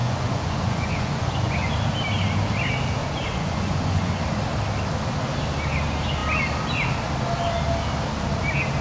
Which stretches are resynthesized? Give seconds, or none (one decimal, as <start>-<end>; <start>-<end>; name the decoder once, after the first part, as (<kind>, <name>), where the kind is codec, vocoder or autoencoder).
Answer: 0.0-1.7 (vocoder, Vocos); 3.0-4.2